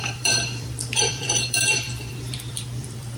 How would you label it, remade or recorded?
remade